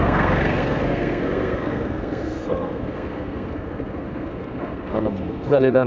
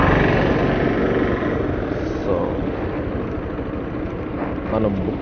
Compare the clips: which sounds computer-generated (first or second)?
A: first